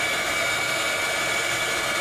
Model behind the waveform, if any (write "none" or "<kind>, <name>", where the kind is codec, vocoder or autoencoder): vocoder, BigVGAN v2